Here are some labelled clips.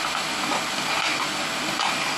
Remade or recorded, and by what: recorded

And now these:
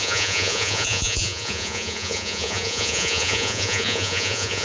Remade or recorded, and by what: remade, vocoder, Vocos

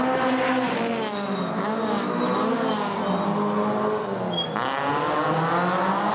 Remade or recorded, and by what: recorded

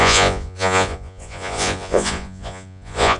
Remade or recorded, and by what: remade, vocoder, Vocos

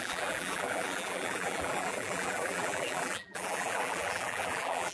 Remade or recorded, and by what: remade, vocoder, BigVGAN v2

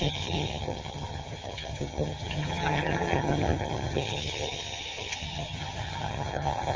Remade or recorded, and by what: remade, vocoder, HiFi-GAN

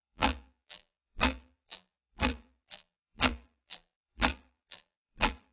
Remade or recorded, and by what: remade, vocoder, BigVGAN v2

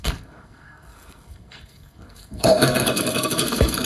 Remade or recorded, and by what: remade, codec, SNAC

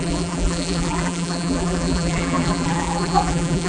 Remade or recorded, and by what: remade, vocoder, BigVGAN v2